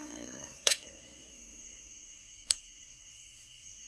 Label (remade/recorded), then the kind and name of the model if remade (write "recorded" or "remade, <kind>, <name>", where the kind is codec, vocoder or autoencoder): remade, codec, SNAC